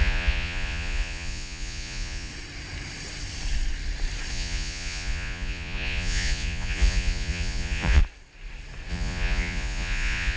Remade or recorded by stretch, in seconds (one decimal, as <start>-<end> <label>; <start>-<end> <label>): 0.0-2.3 remade; 2.3-4.3 recorded; 4.3-8.0 remade; 8.0-8.9 recorded; 8.9-10.4 remade